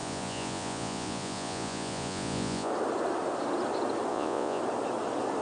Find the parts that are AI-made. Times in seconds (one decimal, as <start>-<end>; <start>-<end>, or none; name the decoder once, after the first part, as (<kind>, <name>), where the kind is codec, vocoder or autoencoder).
0.0-2.7 (vocoder, Vocos); 4.1-4.6